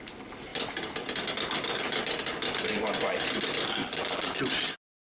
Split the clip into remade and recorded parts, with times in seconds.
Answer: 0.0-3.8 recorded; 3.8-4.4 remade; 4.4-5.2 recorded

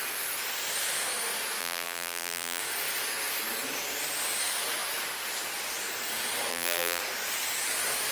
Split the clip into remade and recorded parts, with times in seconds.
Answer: 0.0-1.6 recorded; 1.6-2.6 remade; 2.6-6.5 recorded; 6.5-7.0 remade; 7.0-8.1 recorded